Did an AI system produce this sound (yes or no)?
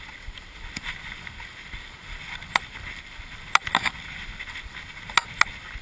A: no